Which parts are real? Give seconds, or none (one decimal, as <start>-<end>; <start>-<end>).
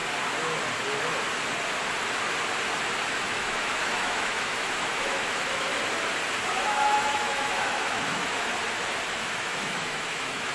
0.0-3.1; 5.7-6.5; 8.5-9.1